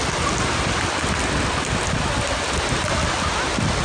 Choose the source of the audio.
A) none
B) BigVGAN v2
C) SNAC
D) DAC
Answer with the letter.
A